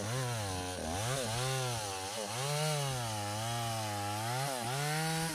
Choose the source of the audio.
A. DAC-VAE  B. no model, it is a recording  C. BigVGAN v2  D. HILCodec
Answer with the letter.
B